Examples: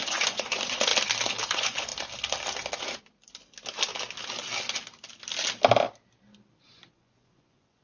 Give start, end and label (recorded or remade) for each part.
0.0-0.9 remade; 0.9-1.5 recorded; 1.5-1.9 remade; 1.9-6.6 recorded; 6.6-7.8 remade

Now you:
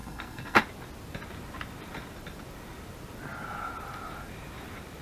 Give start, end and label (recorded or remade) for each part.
0.0-0.6 remade; 0.6-5.0 recorded